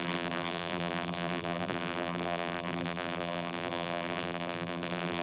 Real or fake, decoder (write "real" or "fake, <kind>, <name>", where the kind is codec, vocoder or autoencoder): fake, vocoder, BigVGAN v2